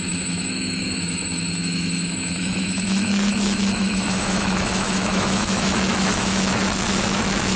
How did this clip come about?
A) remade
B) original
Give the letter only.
A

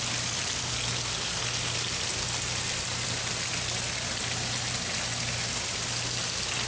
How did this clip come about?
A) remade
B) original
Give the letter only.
B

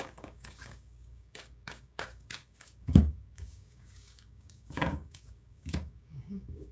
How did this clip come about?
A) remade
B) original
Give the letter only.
A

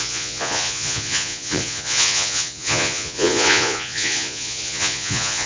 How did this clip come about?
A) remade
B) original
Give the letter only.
A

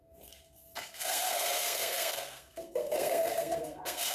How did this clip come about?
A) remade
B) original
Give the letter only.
A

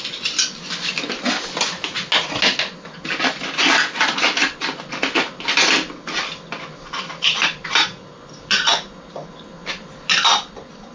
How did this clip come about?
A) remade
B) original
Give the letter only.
B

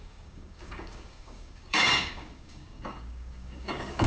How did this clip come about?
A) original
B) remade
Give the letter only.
B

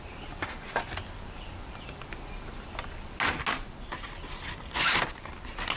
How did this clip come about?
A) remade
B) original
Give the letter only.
B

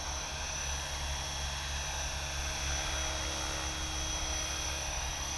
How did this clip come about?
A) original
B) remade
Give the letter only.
A